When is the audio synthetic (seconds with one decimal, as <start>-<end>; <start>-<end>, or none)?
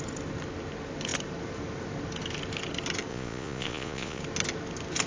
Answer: 3.1-4.2